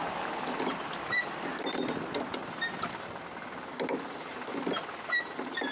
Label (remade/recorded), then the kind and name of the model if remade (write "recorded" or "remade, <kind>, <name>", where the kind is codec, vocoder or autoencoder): recorded